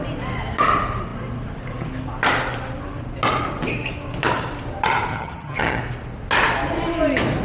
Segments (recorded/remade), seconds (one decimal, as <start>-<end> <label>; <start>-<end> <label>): 0.0-5.1 recorded; 5.1-5.8 remade; 5.8-7.4 recorded